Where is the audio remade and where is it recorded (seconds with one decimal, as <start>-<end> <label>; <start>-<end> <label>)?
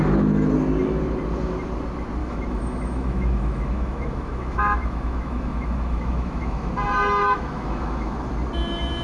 0.0-2.2 recorded; 2.2-6.7 remade; 6.7-7.2 recorded; 7.2-8.3 remade; 8.3-9.0 recorded